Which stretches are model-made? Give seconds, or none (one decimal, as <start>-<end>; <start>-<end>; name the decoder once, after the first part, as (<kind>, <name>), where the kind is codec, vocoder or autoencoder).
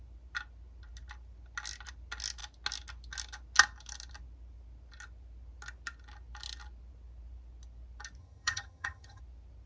8.2-9.2 (vocoder, HiFi-GAN)